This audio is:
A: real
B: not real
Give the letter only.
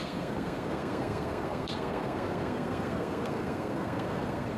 B